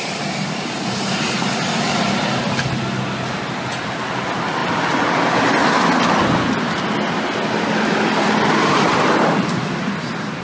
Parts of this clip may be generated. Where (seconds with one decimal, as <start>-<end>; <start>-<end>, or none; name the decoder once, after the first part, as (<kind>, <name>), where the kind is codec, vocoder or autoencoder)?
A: none